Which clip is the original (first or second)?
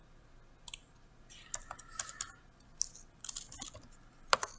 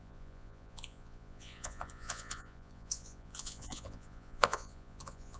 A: first